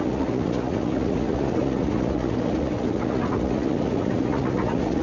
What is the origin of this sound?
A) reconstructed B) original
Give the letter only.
A